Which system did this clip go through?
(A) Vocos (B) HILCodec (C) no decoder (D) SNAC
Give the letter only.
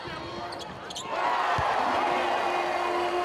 C